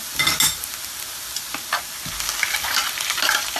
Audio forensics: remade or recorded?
recorded